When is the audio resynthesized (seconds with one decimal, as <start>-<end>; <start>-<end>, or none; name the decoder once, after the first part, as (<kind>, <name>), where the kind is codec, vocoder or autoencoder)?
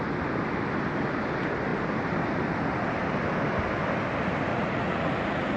4.5-5.6 (vocoder, Vocos)